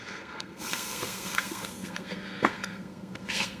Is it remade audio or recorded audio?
remade